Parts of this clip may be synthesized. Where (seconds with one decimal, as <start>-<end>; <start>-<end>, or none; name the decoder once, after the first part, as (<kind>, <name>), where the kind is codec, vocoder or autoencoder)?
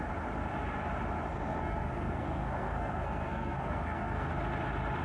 1.3-4.3 (codec, SNAC)